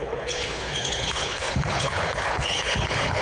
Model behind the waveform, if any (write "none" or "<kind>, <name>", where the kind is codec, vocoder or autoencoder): codec, HILCodec